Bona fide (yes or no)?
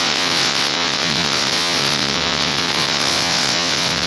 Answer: no